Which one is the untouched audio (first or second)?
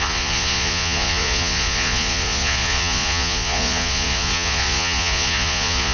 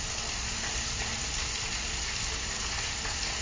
second